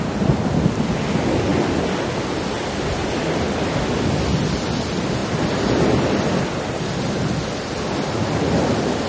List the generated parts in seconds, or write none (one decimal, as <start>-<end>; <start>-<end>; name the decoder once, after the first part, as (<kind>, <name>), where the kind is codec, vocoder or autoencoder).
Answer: none